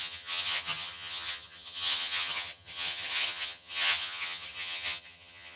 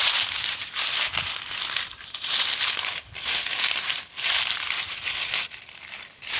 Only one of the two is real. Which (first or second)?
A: second